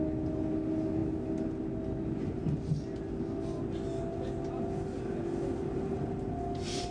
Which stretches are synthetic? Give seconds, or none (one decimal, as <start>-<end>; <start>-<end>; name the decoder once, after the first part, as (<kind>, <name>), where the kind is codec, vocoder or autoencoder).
none